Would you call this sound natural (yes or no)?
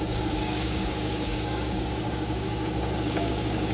no